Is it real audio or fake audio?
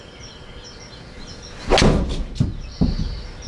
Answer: real